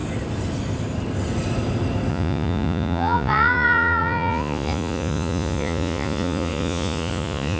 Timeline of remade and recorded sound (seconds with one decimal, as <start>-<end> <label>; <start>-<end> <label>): 0.0-2.1 recorded; 2.1-7.6 remade